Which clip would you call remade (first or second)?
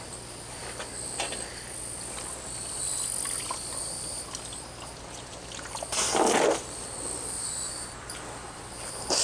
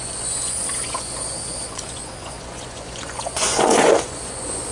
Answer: second